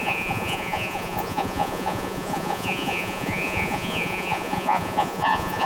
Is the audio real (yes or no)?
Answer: no